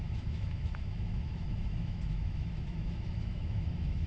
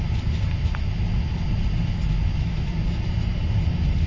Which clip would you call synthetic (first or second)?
first